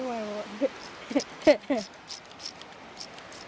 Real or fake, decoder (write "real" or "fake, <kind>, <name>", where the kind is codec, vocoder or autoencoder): real